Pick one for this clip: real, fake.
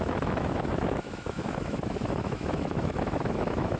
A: fake